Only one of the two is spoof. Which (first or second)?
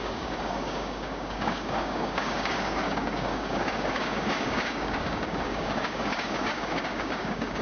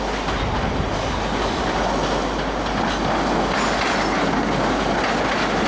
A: first